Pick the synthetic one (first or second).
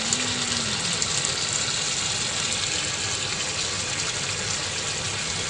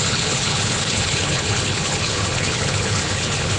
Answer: second